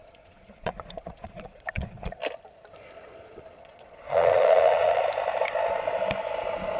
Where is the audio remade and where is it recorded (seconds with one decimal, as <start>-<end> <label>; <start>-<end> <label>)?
0.0-2.2 remade; 2.2-3.0 recorded; 3.0-5.0 remade; 5.0-6.8 recorded